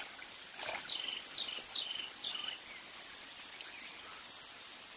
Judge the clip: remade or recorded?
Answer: recorded